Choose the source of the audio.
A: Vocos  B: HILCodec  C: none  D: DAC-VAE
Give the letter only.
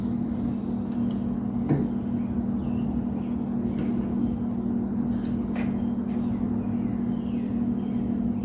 C